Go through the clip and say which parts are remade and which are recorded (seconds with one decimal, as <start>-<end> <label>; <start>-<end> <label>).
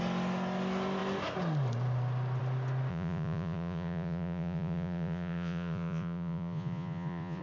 0.0-2.9 recorded; 2.9-7.4 remade